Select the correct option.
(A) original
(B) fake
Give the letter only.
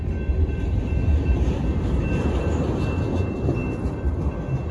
A